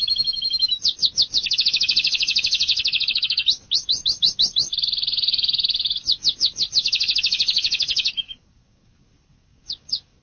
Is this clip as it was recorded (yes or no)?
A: no